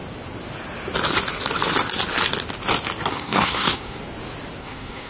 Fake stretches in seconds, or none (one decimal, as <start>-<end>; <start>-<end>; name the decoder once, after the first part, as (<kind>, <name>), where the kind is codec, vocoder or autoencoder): 3.1-4.0 (codec, SNAC); 4.6-5.1